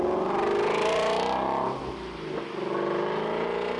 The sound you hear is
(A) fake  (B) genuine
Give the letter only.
B